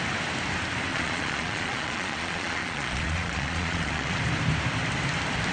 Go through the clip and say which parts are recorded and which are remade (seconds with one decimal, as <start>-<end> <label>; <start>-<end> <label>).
0.0-0.9 recorded; 0.9-4.2 remade; 4.2-5.5 recorded